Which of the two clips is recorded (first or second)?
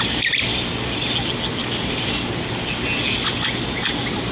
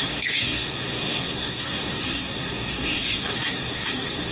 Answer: first